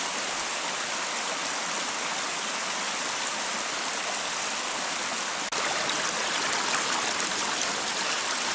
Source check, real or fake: real